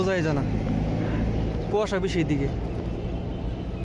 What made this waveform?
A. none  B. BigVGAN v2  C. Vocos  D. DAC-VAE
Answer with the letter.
A